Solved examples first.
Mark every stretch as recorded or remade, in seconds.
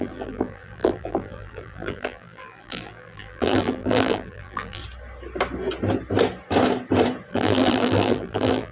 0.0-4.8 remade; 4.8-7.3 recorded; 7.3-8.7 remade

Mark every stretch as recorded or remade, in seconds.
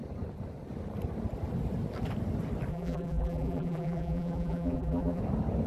0.0-2.7 recorded; 2.7-5.2 remade; 5.2-5.7 recorded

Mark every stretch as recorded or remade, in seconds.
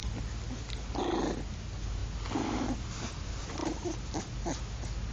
0.0-3.6 recorded; 3.6-4.1 remade; 4.1-5.1 recorded